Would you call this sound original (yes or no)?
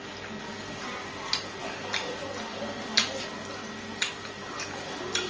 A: yes